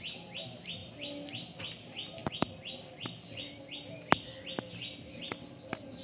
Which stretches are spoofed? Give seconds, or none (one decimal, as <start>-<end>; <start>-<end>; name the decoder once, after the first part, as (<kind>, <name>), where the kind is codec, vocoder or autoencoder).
none